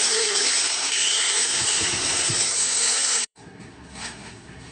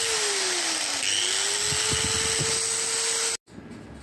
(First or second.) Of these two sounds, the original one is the second